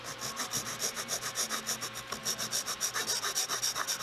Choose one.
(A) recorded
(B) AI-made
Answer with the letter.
A